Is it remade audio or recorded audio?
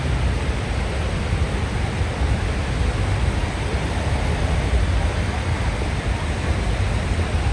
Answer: recorded